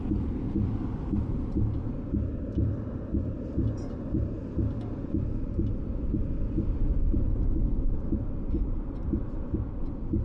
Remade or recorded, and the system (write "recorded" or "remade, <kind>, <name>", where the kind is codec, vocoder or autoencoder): remade, vocoder, BigVGAN v2